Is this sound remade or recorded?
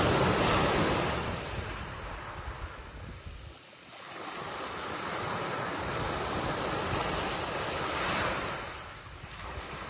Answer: recorded